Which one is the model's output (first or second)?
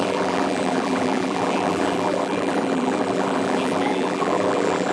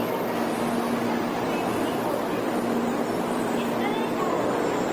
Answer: first